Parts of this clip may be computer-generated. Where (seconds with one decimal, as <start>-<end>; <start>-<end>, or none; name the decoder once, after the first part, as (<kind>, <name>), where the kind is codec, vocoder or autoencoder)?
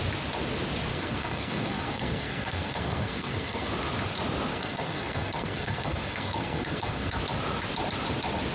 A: 0.9-3.7 (codec, SNAC); 4.5-7.2